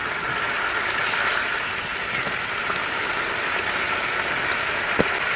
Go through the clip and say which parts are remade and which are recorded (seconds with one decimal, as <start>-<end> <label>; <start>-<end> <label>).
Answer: 0.0-5.4 recorded